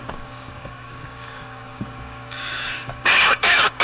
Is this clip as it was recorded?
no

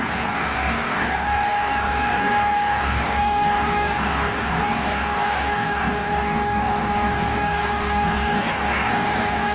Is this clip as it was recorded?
no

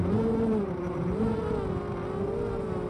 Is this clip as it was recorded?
yes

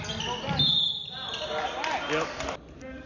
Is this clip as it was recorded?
yes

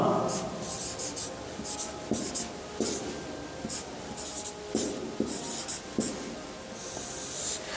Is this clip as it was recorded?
yes